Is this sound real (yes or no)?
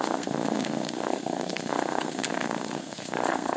no